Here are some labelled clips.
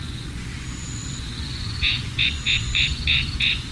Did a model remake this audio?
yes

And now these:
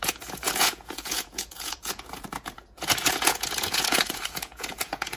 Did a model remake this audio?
yes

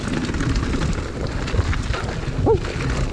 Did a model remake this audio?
no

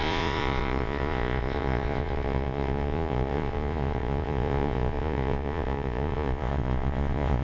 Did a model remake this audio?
yes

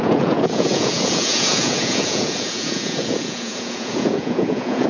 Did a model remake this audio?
yes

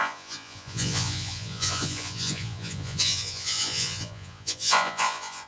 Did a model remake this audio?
yes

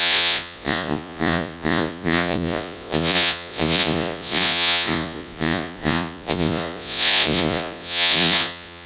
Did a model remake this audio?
yes